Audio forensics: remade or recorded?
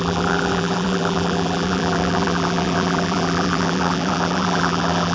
remade